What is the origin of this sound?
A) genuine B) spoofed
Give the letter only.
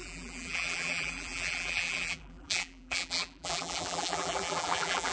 B